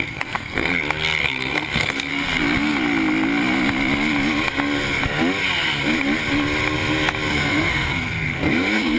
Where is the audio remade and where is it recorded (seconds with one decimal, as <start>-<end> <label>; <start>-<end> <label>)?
0.0-0.7 remade; 0.7-1.2 recorded; 1.2-2.1 remade; 2.1-7.3 recorded; 7.3-9.0 remade